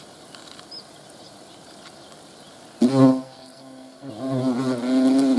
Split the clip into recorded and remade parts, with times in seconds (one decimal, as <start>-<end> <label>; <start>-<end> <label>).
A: 0.0-3.1 recorded; 3.1-4.1 remade; 4.1-5.4 recorded